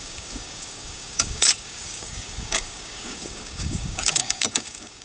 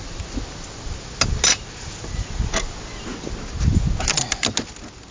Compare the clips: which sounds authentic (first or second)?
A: second